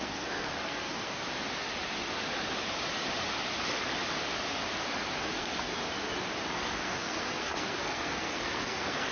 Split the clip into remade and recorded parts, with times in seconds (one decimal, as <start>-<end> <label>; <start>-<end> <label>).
0.0-1.2 remade; 1.2-5.2 recorded; 5.2-5.7 remade; 5.7-6.5 recorded; 6.5-9.1 remade